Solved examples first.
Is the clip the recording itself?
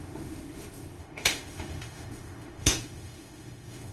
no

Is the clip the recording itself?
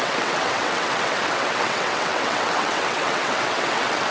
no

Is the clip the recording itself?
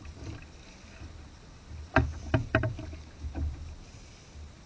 yes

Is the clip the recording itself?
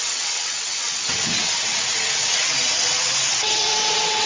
no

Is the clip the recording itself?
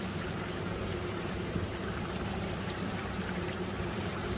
no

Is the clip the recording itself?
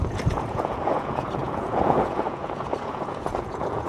no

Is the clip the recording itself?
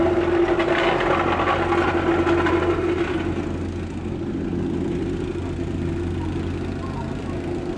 yes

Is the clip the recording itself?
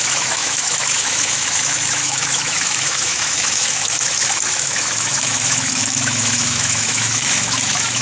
no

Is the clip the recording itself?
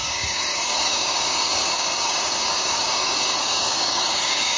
no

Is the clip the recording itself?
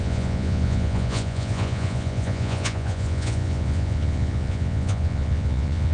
no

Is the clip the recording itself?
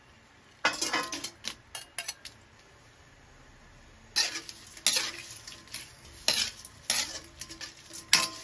yes